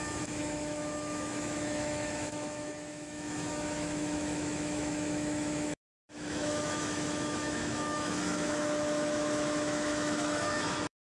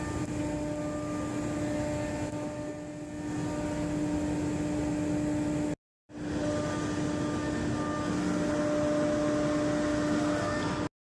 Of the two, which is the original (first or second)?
second